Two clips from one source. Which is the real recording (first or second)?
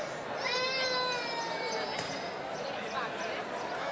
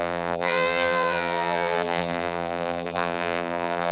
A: first